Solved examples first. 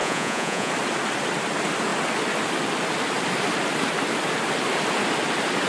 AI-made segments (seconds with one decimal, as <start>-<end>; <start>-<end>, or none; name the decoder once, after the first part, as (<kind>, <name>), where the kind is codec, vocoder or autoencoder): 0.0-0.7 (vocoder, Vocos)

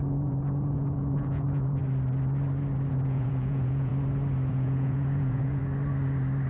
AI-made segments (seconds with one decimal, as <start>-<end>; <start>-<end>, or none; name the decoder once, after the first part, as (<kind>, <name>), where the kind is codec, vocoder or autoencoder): 0.0-1.8 (vocoder, Vocos); 2.9-3.9; 4.5-5.6

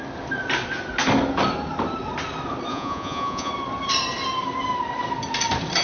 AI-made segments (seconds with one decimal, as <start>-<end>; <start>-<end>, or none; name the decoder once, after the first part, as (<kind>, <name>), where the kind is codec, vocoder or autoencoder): 2.7-3.5 (vocoder, Vocos)